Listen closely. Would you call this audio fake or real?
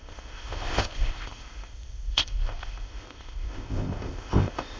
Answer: fake